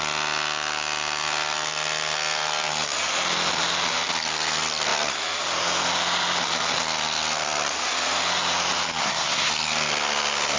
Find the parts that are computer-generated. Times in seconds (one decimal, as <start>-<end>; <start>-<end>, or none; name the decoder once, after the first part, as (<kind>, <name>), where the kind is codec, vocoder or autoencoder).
9.0-9.5 (codec, SNAC)